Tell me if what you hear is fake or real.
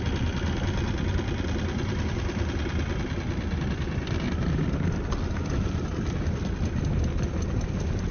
real